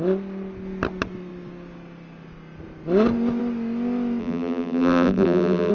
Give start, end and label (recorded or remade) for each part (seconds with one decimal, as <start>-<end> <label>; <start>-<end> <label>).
0.0-4.2 recorded; 4.2-5.7 remade